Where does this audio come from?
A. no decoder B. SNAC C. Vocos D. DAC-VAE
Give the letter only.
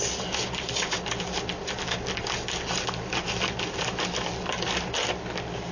A